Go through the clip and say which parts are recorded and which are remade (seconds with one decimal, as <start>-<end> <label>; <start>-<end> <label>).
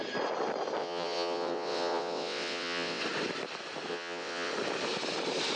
0.0-0.8 recorded; 0.8-3.0 remade; 3.0-3.9 recorded; 3.9-4.5 remade; 4.5-5.6 recorded